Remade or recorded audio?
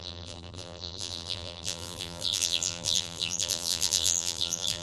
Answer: remade